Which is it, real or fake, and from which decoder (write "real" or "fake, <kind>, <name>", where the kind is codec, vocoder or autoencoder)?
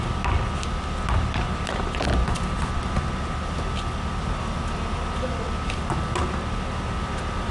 real